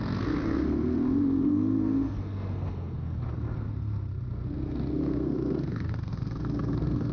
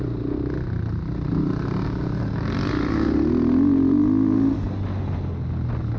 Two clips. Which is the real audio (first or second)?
second